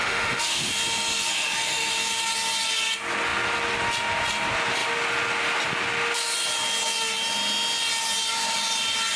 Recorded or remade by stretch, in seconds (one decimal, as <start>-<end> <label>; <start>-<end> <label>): 0.0-0.7 remade; 0.7-1.3 recorded; 1.3-1.9 remade; 1.9-9.2 recorded